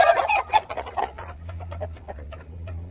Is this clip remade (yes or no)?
yes